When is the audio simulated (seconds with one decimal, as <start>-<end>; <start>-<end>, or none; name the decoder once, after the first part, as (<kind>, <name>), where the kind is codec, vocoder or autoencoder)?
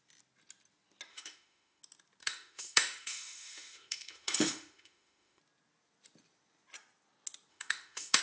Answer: 1.1-1.8 (autoencoder, DAC-VAE); 2.2-5.4; 7.5-8.2